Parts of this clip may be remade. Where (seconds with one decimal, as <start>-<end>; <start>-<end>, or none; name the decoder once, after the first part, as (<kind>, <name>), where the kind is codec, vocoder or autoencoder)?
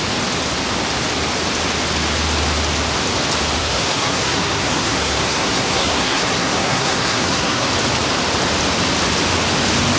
3.6-7.7 (codec, SNAC)